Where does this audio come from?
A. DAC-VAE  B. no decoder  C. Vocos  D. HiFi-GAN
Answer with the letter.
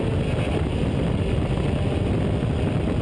B